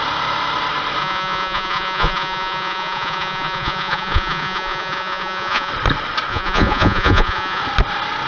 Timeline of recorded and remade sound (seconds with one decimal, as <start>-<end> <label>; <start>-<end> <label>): 0.0-1.0 recorded; 1.0-5.7 remade; 5.7-6.3 recorded; 6.3-7.6 remade; 7.6-8.3 recorded